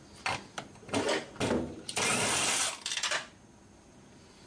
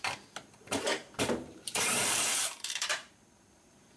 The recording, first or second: first